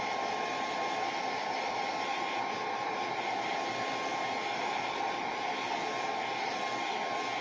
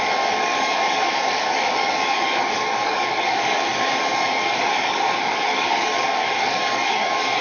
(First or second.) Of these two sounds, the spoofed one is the second